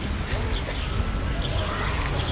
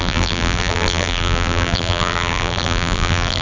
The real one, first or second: first